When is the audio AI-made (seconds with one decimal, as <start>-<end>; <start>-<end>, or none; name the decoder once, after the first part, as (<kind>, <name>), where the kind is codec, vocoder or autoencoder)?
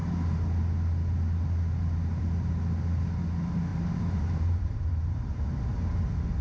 3.7-5.4 (vocoder, BigVGAN v2)